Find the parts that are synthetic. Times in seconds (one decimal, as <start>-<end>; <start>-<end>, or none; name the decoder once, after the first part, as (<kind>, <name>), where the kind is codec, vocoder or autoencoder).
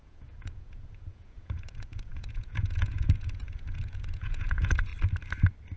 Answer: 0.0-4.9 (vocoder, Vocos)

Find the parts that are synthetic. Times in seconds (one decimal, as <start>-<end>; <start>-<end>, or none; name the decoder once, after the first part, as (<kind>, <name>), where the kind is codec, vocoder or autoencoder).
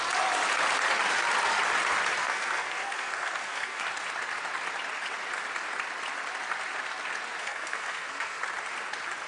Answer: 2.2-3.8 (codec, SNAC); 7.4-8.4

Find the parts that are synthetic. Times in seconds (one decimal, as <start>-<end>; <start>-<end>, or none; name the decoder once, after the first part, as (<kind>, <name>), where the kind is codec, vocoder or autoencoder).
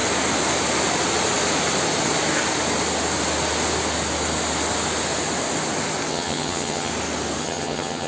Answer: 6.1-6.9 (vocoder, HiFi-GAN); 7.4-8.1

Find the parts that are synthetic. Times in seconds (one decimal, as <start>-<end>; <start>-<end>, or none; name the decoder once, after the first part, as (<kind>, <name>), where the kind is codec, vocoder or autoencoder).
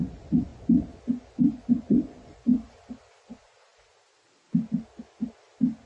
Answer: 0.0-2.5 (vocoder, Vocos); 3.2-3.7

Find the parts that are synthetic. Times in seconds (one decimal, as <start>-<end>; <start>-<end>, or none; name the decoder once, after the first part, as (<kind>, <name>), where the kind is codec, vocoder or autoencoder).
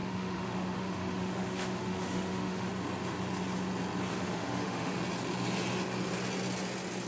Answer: 0.0-2.7 (autoencoder, DAC-VAE); 4.1-5.0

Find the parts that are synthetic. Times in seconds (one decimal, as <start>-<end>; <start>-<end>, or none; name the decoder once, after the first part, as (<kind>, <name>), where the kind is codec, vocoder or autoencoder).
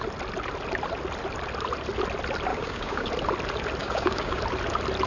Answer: 2.5-3.1 (codec, DAC); 3.8-4.4